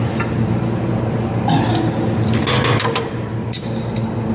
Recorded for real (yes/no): yes